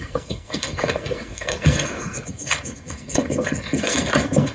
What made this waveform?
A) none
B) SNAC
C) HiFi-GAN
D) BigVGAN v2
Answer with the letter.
B